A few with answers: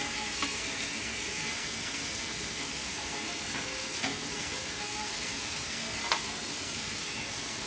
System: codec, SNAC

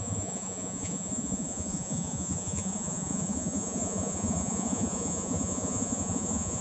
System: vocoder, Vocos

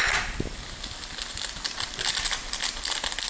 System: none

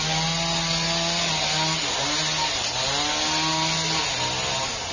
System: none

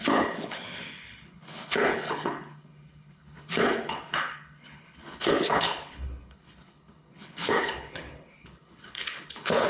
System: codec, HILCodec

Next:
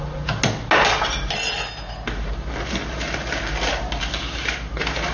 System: none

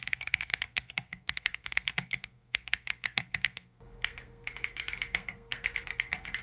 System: codec, SNAC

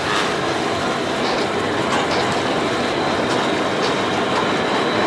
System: none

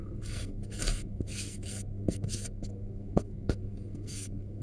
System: codec, SNAC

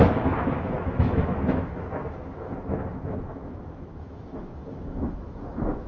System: autoencoder, DAC-VAE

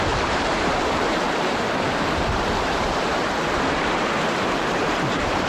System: vocoder, BigVGAN v2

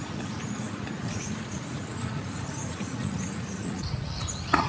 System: vocoder, Vocos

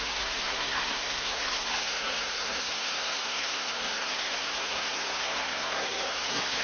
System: codec, SNAC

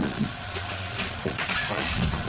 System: vocoder, Vocos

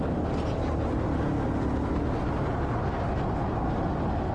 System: none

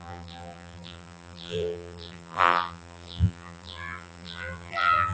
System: vocoder, BigVGAN v2